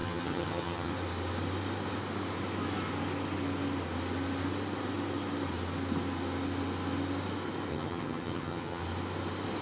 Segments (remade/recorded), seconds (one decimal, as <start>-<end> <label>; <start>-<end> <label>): 0.0-0.9 remade; 0.9-7.7 recorded; 7.7-8.8 remade; 8.8-9.6 recorded